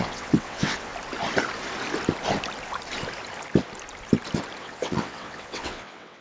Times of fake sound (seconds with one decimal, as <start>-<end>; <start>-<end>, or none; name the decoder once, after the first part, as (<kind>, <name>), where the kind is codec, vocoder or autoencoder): 0.0-0.9 (vocoder, WaveNeXt); 4.6-6.2